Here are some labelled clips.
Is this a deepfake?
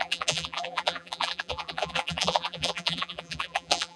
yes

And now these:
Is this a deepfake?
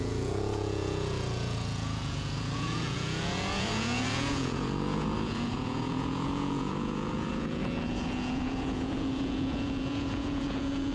yes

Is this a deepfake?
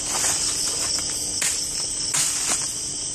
no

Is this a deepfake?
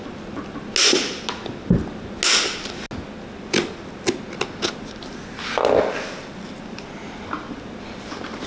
no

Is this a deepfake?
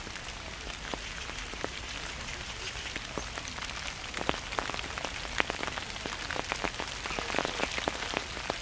no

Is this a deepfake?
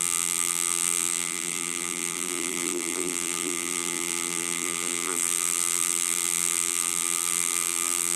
yes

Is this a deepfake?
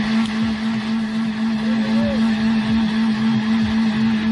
no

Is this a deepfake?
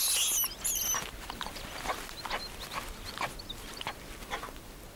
no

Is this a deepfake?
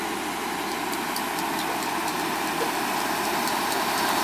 no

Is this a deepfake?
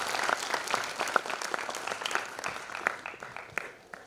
no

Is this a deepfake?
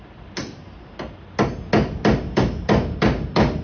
no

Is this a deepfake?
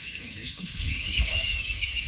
yes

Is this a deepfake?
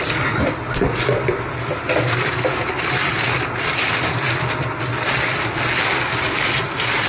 no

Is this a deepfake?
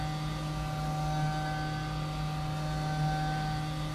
no